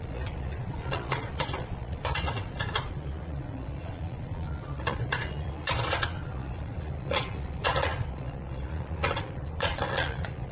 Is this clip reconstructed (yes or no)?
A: yes